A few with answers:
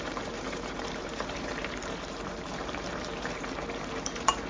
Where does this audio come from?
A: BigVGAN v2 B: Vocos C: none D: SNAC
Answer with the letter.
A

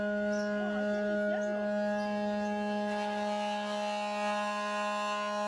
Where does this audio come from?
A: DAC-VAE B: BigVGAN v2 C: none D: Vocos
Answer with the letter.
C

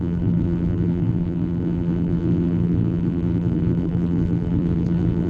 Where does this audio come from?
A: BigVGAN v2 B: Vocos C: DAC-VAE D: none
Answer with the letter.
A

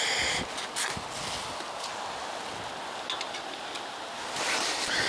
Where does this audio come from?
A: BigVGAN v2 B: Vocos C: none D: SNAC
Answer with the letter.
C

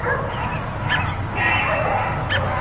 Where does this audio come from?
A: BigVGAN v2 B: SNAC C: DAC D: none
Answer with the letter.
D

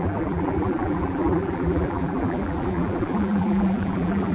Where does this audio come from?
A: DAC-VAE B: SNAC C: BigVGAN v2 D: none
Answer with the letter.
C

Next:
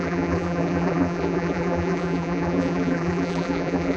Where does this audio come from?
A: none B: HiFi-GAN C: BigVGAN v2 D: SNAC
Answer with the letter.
C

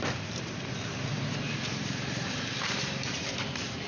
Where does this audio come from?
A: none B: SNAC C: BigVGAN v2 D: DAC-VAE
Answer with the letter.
C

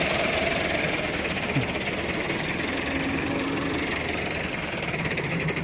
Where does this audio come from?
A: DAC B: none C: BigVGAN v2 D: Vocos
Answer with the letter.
C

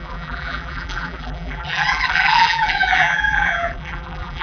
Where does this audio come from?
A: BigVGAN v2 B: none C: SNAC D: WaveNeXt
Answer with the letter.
A